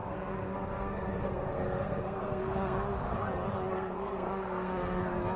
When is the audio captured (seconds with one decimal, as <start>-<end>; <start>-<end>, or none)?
3.2-3.7; 5.0-5.4